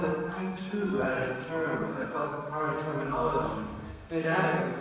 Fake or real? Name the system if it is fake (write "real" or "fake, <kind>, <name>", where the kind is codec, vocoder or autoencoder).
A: fake, codec, SNAC